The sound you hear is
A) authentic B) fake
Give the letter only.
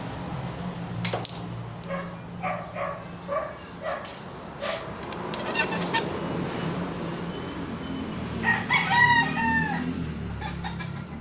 A